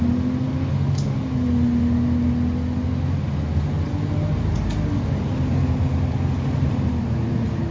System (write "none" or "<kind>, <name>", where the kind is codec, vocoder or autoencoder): none